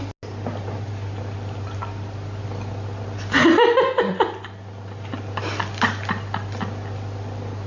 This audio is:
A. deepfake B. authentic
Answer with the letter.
B